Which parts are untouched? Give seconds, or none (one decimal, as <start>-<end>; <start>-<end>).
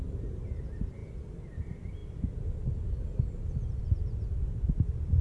0.0-5.2